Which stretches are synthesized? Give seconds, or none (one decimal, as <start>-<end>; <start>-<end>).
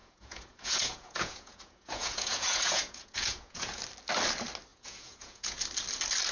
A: 0.0-3.8; 4.7-5.6